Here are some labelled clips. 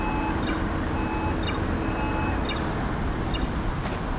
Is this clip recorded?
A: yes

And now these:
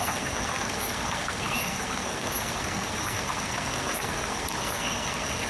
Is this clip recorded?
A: no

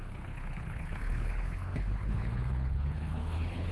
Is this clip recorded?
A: no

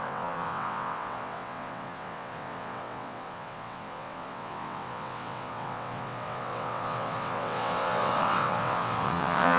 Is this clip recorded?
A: no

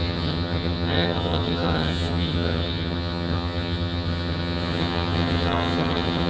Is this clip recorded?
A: no